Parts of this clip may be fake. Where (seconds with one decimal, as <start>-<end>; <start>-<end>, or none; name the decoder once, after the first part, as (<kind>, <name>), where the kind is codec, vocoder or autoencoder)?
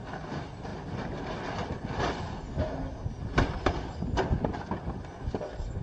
none